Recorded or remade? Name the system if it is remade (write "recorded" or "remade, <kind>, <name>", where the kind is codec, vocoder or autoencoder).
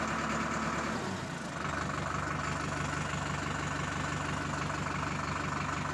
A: recorded